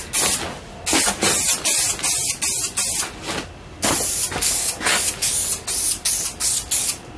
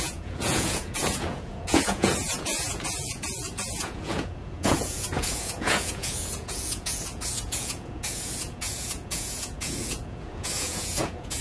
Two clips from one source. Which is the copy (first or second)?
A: second